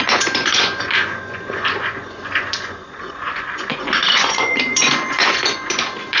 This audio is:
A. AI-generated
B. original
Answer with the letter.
A